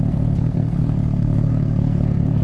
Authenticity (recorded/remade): remade